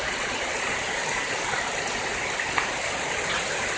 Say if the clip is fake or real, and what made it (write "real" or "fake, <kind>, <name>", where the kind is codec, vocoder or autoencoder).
real